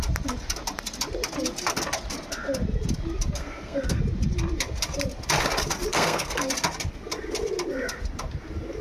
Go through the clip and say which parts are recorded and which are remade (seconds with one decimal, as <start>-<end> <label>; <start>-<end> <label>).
0.0-3.4 recorded; 3.4-4.0 remade; 4.0-5.9 recorded; 5.9-6.5 remade; 6.5-8.8 recorded